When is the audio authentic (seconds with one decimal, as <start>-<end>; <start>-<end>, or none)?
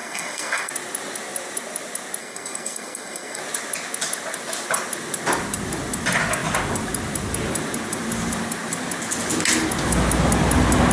0.7-2.2; 3.4-10.9